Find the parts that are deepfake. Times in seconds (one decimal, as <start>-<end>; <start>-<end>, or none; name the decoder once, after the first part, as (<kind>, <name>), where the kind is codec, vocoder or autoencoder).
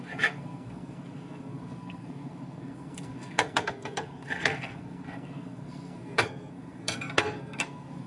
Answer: 0.0-8.1 (codec, SNAC)